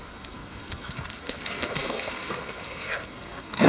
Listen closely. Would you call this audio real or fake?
fake